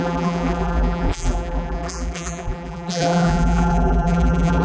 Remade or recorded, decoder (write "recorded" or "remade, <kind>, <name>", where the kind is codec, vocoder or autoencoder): remade, vocoder, BigVGAN v2